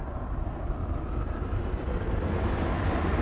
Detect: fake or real real